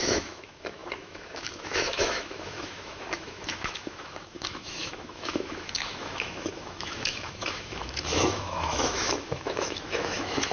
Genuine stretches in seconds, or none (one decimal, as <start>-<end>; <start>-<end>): none